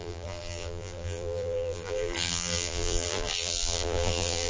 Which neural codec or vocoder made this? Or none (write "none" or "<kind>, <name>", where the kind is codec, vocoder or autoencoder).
vocoder, BigVGAN v2